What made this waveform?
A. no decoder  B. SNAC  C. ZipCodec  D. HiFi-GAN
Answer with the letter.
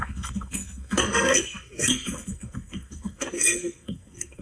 B